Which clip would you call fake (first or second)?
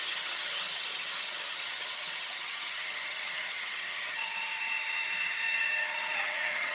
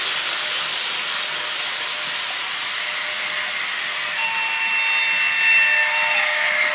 first